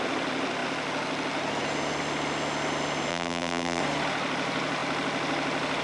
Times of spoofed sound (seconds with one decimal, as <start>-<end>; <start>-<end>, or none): 3.1-3.8